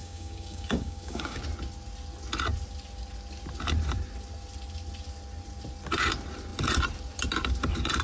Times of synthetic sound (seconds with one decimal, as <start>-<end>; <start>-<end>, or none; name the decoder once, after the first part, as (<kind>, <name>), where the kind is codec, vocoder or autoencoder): 0.0-1.4 (codec, DAC)